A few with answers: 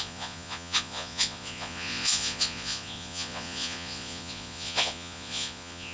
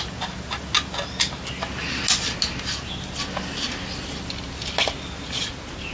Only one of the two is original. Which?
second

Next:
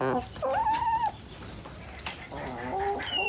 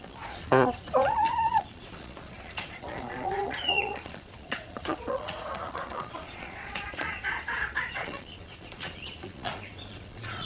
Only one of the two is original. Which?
first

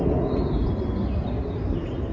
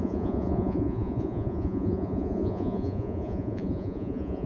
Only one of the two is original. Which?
first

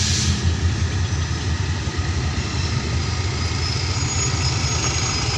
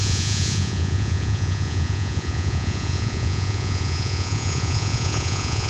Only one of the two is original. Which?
first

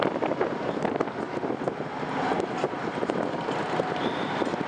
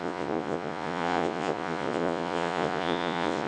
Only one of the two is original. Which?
first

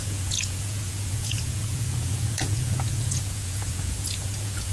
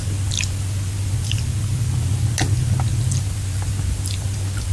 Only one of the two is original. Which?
second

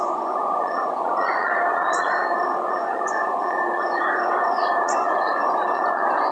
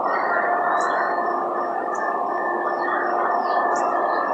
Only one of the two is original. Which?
second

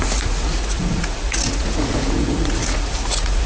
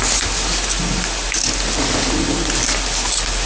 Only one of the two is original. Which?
second